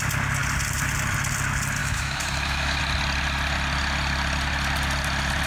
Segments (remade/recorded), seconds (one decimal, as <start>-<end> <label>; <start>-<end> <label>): 0.0-1.8 recorded; 1.8-2.8 remade; 2.8-5.5 recorded